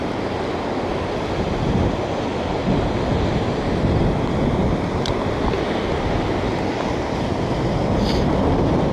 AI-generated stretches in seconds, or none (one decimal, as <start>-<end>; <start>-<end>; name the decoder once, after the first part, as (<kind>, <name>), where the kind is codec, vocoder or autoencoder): none